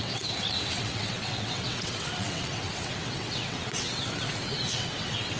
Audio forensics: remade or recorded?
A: remade